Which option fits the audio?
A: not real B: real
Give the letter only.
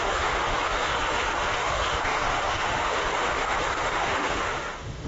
A